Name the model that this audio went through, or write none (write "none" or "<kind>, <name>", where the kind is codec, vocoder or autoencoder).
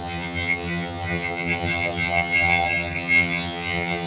vocoder, HiFi-GAN